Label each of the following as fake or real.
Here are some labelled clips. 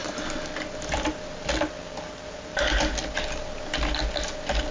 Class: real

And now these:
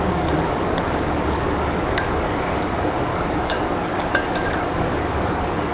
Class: fake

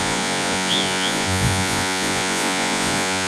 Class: fake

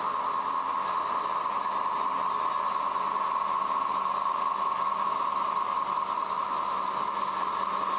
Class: real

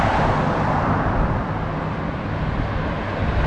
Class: real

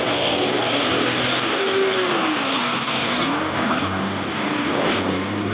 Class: fake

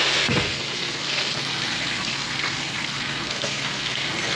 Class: fake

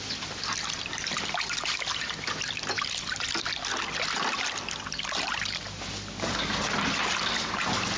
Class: real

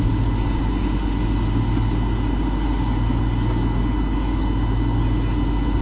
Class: real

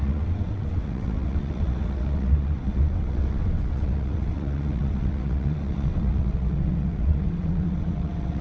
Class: fake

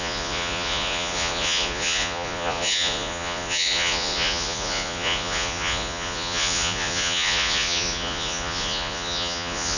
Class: fake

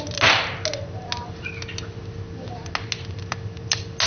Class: real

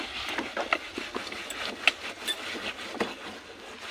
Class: real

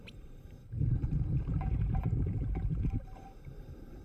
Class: fake